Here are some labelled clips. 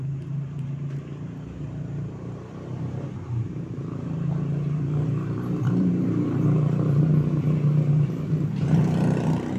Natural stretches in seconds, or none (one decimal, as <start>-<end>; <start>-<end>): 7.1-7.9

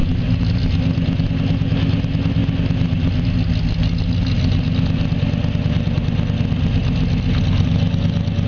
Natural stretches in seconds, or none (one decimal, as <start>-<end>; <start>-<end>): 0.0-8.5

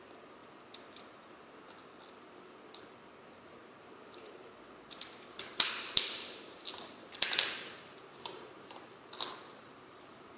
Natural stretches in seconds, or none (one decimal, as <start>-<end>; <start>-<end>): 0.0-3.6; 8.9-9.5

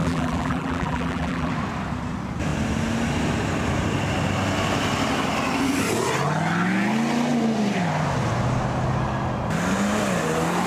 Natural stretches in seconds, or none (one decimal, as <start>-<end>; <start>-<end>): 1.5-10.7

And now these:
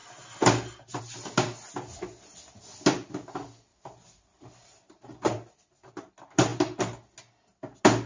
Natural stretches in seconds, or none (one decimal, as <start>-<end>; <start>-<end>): 0.0-3.7; 5.5-8.1

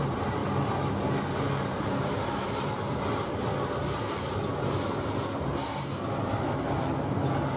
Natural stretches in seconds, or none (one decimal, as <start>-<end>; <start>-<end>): 0.4-1.8; 3.5-7.6

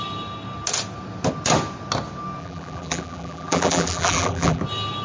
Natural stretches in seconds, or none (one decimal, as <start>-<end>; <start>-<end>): 0.0-2.4; 4.6-5.0

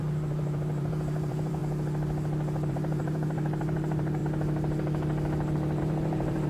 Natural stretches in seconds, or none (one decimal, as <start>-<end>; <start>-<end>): 1.6-2.7; 4.2-5.8